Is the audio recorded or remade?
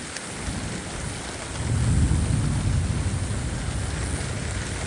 recorded